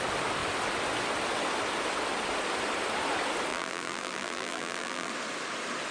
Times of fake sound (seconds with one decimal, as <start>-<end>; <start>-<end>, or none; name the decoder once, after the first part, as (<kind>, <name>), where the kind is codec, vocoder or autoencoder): 3.5-5.1 (vocoder, BigVGAN v2)